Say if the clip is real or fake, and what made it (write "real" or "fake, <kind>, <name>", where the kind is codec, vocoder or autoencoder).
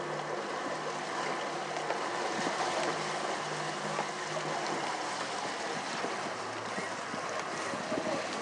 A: real